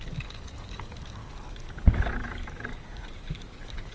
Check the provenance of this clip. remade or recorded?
remade